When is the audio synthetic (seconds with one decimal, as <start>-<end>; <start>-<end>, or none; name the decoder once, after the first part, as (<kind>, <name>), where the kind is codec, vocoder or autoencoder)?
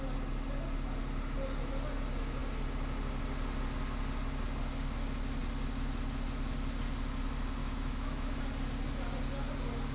7.6-8.4 (autoencoder, DAC-VAE)